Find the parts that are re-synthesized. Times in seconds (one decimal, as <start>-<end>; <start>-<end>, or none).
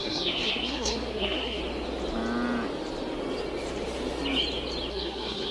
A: 0.0-1.6; 4.9-5.5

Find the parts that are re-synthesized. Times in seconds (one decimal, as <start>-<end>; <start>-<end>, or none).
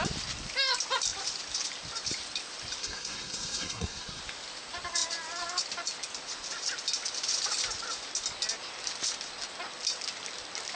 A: 2.8-4.2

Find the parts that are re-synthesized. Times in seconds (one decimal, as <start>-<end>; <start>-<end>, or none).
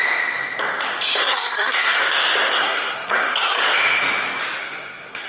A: 1.2-2.0; 2.5-3.6; 4.6-5.3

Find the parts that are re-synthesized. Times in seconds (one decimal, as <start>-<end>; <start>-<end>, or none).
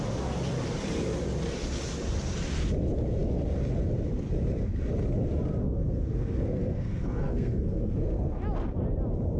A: 5.6-8.4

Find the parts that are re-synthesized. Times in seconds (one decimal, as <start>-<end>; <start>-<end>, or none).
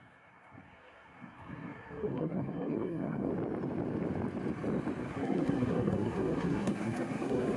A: 0.0-3.3; 5.0-7.6